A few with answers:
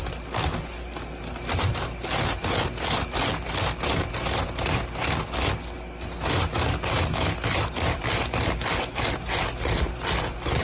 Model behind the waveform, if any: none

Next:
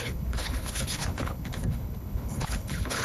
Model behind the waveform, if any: codec, HILCodec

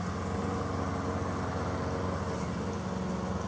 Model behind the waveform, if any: none